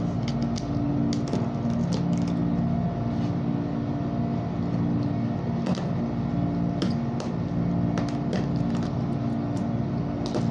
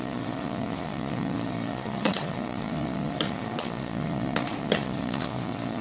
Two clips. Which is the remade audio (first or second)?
second